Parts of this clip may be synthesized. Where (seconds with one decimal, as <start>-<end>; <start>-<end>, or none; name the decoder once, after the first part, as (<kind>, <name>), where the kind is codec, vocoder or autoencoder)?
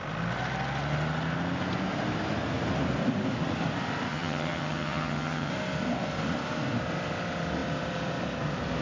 4.1-5.5 (vocoder, HiFi-GAN)